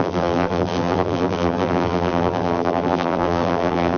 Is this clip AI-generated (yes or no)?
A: yes